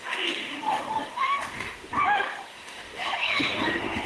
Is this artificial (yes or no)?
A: yes